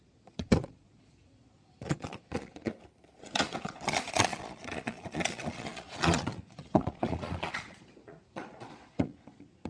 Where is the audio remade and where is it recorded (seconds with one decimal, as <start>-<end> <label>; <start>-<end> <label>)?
0.0-2.7 remade; 2.7-3.2 recorded; 3.2-9.7 remade